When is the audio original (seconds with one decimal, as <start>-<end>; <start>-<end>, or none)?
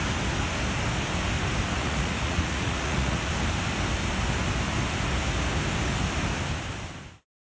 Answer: 0.0-1.8; 3.3-7.6